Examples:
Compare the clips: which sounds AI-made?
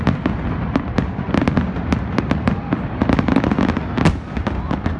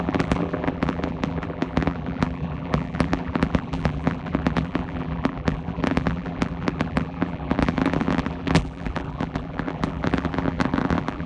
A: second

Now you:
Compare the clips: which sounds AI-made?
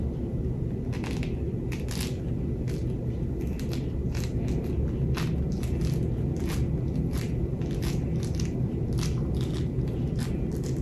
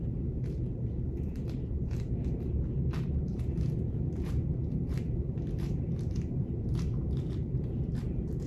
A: second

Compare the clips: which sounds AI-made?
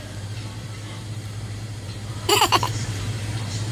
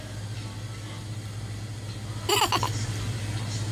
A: first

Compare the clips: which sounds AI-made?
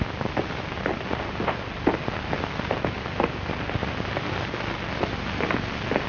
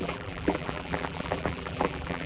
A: second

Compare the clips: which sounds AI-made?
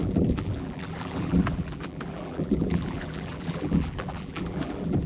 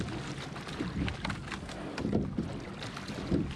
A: first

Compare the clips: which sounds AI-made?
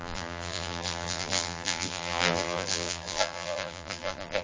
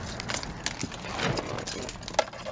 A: first